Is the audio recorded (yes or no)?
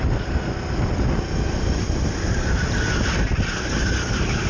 yes